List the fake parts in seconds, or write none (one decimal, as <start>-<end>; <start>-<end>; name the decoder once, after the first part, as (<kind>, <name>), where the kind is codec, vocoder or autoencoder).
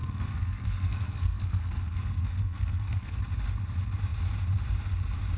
0.0-3.2 (codec, SNAC)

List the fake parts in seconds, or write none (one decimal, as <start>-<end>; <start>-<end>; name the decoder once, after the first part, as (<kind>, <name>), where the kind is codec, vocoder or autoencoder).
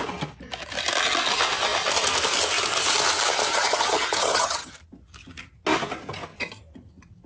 3.5-4.7 (vocoder, HiFi-GAN)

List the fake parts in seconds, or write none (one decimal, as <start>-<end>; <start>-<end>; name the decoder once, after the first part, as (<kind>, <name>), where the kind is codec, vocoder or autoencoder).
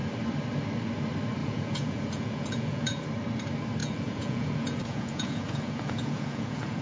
1.4-3.0 (vocoder, Vocos); 3.8-6.8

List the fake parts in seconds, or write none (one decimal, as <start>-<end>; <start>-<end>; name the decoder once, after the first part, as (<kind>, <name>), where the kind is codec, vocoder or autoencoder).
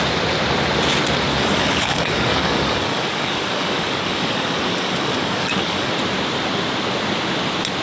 1.3-5.9 (codec, DAC)